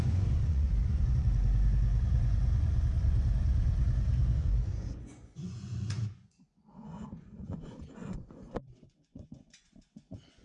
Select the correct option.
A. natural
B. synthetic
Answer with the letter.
B